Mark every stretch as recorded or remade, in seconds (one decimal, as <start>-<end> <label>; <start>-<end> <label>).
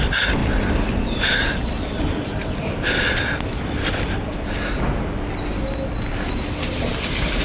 0.0-0.4 recorded; 0.4-2.0 remade; 2.0-7.4 recorded